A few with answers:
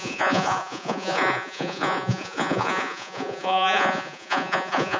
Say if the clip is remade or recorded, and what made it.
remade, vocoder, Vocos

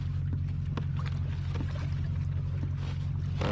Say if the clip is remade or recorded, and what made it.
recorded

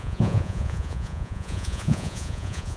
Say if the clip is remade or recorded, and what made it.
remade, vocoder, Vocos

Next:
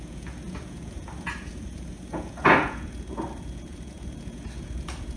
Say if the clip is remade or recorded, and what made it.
remade, vocoder, Vocos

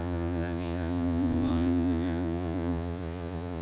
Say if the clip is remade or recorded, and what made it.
remade, vocoder, Vocos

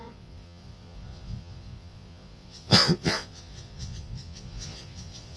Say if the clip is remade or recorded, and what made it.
remade, vocoder, Vocos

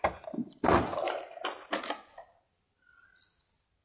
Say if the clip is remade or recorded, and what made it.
recorded